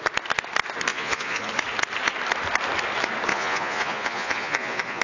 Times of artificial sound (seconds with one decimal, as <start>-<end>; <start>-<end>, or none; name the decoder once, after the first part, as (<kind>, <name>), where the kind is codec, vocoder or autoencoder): 0.9-1.5 (vocoder, Vocos); 3.3-5.0